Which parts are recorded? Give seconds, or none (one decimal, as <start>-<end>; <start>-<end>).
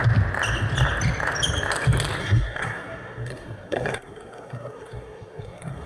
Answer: 0.0-2.2